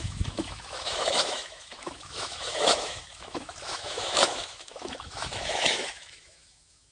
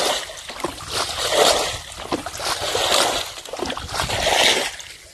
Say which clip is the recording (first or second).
second